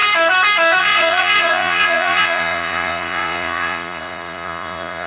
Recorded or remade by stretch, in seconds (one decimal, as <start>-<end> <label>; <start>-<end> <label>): 0.0-0.8 recorded; 0.8-5.1 remade